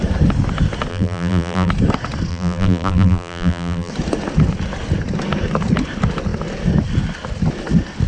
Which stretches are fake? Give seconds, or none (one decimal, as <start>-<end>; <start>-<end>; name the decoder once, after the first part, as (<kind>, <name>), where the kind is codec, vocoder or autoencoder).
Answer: 0.9-1.7 (vocoder, BigVGAN v2); 2.3-3.9